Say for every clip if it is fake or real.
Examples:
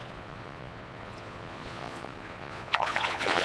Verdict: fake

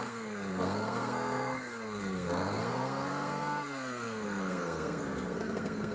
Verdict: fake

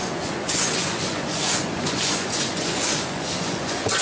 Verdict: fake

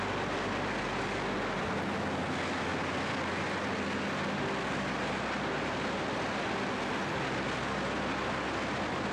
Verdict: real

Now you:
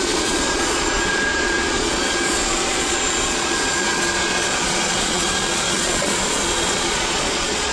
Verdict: fake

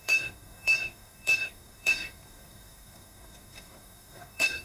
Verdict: fake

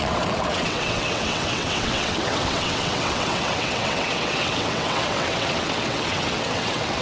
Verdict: fake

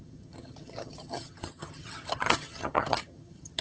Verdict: fake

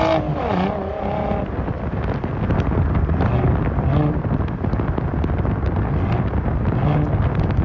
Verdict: real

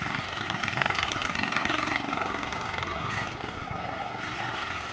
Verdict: fake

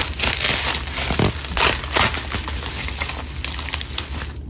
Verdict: real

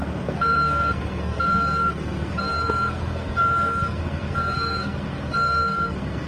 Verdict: fake